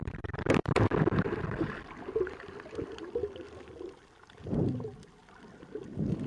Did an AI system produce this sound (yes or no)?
no